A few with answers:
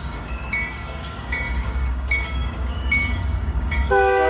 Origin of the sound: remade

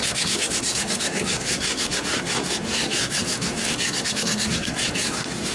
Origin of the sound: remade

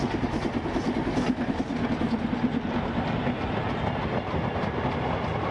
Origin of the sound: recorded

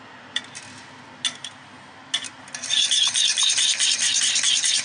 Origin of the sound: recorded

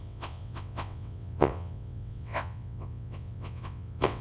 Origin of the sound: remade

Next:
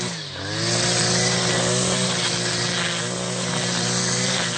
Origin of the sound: recorded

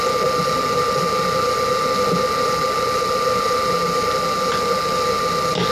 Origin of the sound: recorded